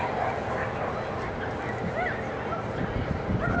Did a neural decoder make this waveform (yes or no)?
no